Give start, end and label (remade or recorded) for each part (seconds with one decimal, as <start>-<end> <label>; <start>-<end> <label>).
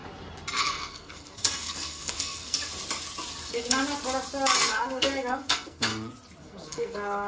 0.0-0.6 recorded; 0.6-2.7 remade; 2.7-3.4 recorded; 3.4-3.8 remade; 3.8-4.6 recorded; 4.6-5.9 remade; 5.9-6.4 recorded; 6.4-7.3 remade